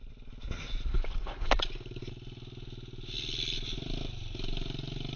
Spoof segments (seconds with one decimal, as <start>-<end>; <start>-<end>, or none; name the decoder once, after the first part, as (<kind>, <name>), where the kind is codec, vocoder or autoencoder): 0.9-1.5 (codec, HILCodec)